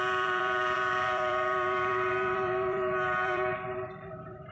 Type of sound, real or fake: fake